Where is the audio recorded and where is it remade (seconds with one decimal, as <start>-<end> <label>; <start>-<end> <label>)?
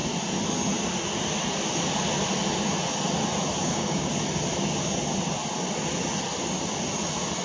0.0-3.6 recorded; 3.6-4.1 remade; 4.1-7.4 recorded